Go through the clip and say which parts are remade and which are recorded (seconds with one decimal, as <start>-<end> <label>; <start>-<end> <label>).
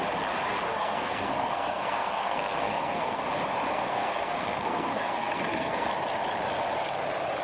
0.0-0.7 recorded; 0.7-3.2 remade; 3.2-3.7 recorded; 3.7-5.9 remade; 5.9-7.4 recorded